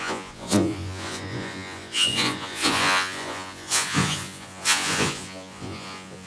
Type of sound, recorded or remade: remade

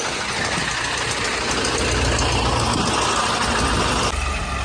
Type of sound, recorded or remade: recorded